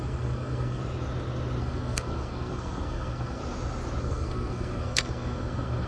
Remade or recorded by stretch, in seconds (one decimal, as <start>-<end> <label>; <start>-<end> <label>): 0.0-0.8 remade; 0.8-1.6 recorded; 1.6-3.4 remade; 3.4-4.0 recorded; 4.0-5.9 remade